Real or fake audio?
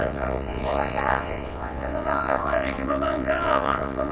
fake